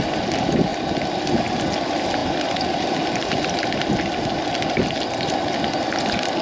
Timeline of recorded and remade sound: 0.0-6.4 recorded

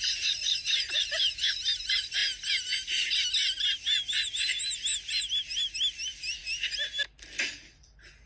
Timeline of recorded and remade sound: 0.0-8.3 recorded

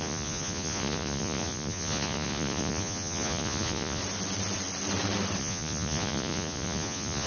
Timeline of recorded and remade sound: 0.0-4.0 remade; 4.0-5.4 recorded; 5.4-7.3 remade